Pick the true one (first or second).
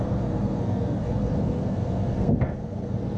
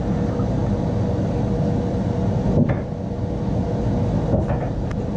second